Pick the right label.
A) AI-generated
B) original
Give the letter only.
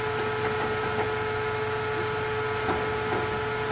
B